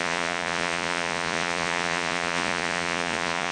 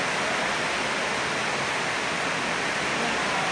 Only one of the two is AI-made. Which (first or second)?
first